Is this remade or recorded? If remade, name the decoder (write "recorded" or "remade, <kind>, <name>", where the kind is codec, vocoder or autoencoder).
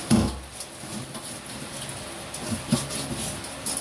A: recorded